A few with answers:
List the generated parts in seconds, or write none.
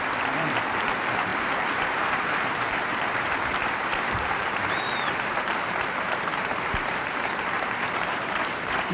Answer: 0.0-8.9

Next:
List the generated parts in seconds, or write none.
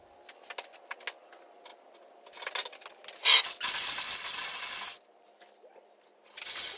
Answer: none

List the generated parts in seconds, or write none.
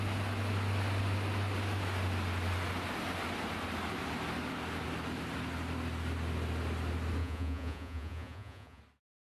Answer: 7.2-8.8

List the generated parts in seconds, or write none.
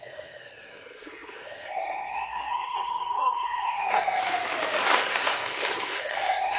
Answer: 0.0-4.2; 4.8-6.6